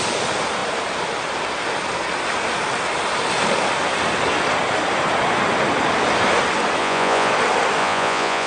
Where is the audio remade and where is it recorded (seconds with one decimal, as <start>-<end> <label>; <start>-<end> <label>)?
0.0-6.8 recorded; 6.8-7.3 remade; 7.3-7.8 recorded; 7.8-8.5 remade